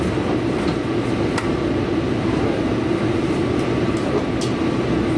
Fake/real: real